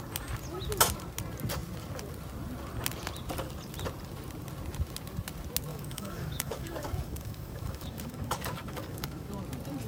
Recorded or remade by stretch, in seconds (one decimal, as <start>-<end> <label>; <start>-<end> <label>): 0.0-5.7 recorded; 5.7-9.3 remade; 9.3-9.9 recorded